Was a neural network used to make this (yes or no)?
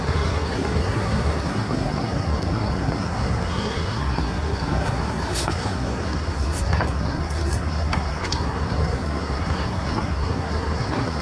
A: yes